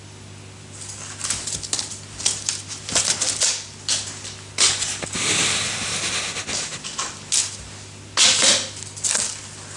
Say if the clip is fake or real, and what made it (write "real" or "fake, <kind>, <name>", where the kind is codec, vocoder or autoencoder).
real